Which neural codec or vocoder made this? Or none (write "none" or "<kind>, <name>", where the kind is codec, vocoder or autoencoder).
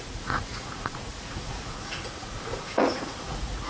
vocoder, Vocos